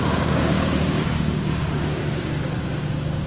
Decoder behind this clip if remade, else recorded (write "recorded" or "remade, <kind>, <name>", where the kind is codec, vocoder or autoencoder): remade, codec, DAC